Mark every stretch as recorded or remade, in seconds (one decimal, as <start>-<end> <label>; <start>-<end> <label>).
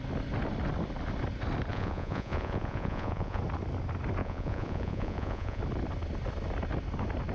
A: 0.0-1.7 recorded; 1.7-3.4 remade; 3.4-4.2 recorded; 4.2-5.6 remade; 5.6-7.3 recorded